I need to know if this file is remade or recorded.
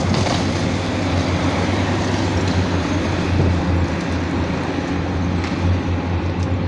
recorded